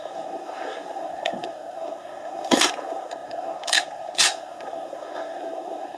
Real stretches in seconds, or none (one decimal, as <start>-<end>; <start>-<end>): none